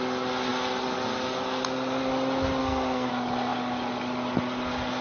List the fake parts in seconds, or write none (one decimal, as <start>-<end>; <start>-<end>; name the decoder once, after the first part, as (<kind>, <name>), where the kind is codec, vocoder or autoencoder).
2.6-3.1 (codec, SNAC)